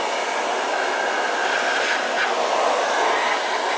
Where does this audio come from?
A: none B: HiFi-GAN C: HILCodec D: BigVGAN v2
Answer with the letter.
A